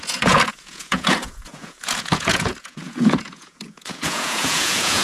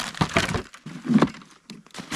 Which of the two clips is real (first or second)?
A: second